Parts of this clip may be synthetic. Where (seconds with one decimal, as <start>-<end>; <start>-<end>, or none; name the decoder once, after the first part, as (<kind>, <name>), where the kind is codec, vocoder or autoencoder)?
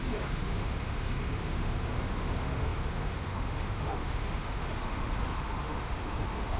0.0-6.6 (autoencoder, DAC-VAE)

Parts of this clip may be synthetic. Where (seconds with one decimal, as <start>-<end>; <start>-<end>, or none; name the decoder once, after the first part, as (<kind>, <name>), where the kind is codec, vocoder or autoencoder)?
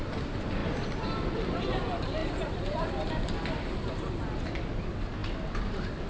0.6-1.2 (vocoder, BigVGAN v2); 2.2-4.1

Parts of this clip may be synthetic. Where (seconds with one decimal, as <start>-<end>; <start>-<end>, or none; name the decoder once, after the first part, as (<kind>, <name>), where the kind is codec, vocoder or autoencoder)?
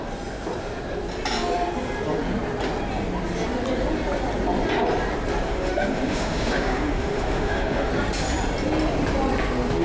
5.5-7.9 (autoencoder, DAC-VAE)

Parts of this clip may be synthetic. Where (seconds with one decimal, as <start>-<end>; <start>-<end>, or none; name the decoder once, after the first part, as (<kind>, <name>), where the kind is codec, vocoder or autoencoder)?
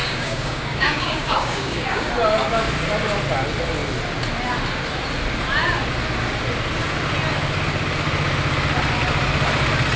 0.0-2.1 (codec, DAC)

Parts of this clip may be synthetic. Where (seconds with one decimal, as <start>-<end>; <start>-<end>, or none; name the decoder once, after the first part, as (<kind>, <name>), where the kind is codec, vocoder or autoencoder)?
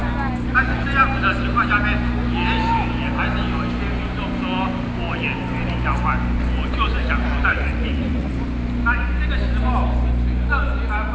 7.5-8.3 (vocoder, Vocos)